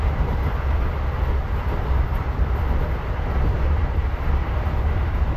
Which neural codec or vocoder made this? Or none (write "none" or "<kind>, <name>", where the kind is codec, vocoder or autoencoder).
none